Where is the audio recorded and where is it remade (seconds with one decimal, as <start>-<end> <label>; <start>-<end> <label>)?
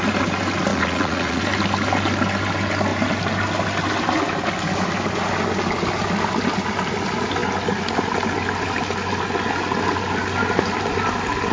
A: 0.0-0.7 recorded; 0.7-1.4 remade; 1.4-11.5 recorded